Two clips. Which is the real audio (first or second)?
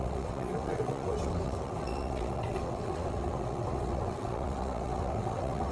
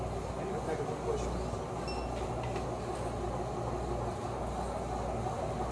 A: second